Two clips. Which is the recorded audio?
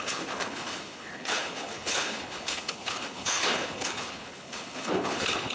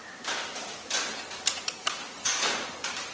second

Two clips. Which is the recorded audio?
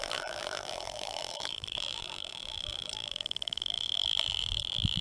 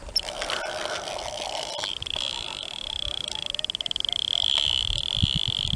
second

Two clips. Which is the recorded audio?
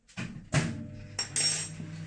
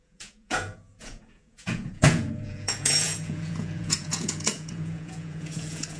first